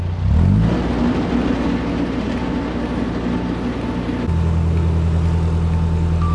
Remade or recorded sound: recorded